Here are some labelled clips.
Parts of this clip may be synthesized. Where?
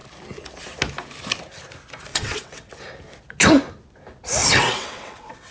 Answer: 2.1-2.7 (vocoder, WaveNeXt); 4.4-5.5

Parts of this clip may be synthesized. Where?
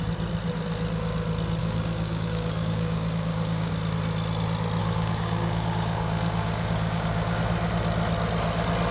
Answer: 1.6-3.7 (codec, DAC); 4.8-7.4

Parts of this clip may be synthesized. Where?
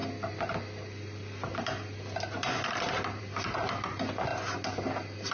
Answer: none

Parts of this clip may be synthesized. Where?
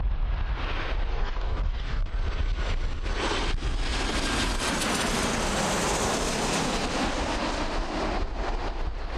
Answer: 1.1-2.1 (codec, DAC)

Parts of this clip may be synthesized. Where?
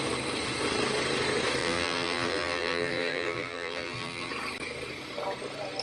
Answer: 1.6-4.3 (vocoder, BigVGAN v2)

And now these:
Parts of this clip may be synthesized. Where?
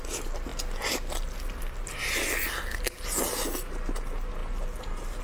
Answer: none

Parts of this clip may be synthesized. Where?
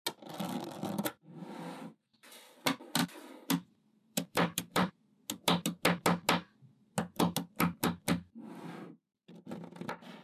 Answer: 3.0-4.9 (vocoder, BigVGAN v2)